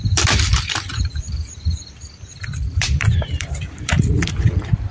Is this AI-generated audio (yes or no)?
yes